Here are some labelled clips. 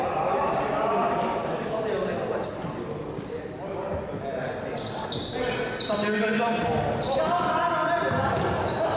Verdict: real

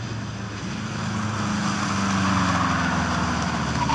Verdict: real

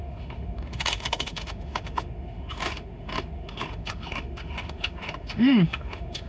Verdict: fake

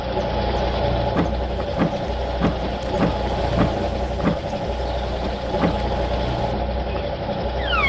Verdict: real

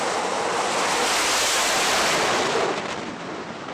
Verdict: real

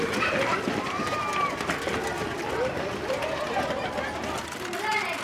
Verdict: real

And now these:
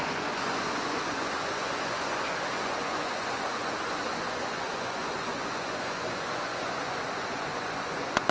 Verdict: fake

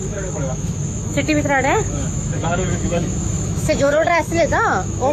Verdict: fake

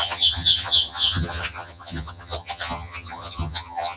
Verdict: fake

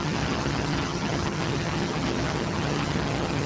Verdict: fake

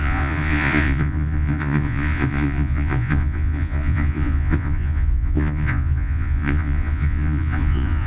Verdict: fake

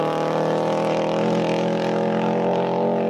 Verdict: real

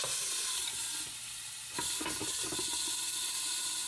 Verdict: real